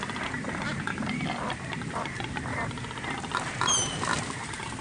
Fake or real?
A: real